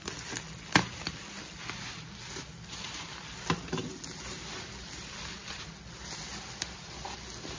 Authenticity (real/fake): real